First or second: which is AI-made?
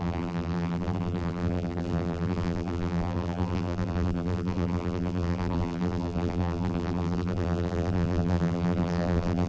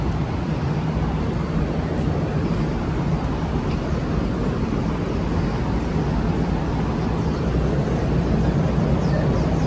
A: first